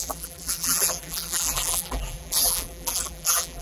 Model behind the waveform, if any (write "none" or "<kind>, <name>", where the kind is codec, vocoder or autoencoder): vocoder, BigVGAN v2